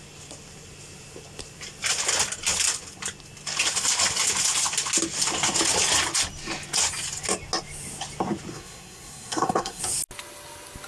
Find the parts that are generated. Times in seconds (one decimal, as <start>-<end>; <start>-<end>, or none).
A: 8.5-9.8